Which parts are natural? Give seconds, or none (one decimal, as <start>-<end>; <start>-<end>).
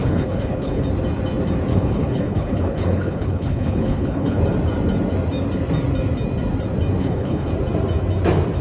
0.8-1.7; 4.4-7.0; 7.5-8.6